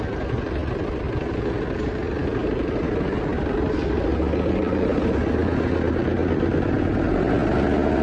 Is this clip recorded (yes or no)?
yes